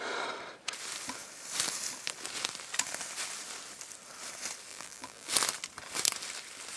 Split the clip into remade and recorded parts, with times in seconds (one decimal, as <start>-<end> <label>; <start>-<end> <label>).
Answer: 0.0-4.7 recorded; 4.7-5.3 remade; 5.3-6.8 recorded